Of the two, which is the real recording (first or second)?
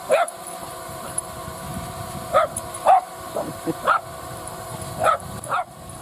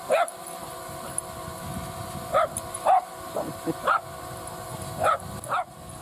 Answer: second